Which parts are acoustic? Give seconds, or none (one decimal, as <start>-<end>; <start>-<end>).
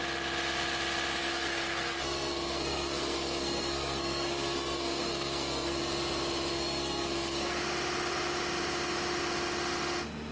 0.0-1.2; 5.8-6.5; 7.6-10.3